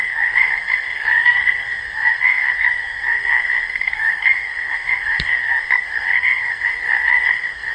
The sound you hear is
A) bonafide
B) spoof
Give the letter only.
B